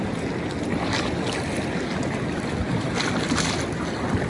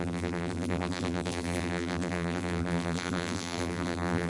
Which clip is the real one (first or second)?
first